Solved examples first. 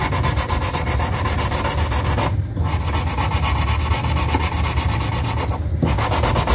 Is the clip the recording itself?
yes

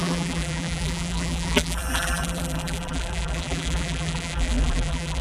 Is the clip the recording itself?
no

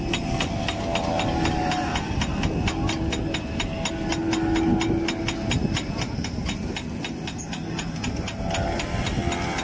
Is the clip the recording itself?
yes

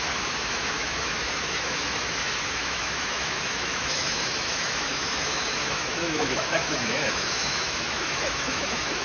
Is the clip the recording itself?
no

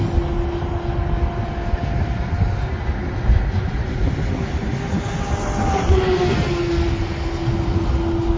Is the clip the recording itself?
yes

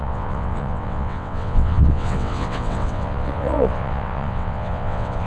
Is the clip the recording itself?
no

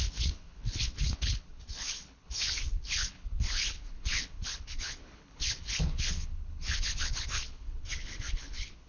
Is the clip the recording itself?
no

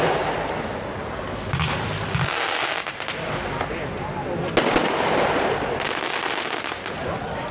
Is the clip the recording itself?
yes